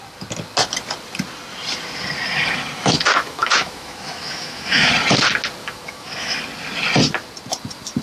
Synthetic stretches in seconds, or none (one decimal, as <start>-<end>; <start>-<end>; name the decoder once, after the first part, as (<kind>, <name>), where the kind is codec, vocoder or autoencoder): 2.8-4.9 (autoencoder, DAC-VAE); 5.6-6.4